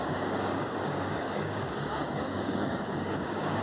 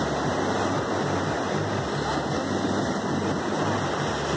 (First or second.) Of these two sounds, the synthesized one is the first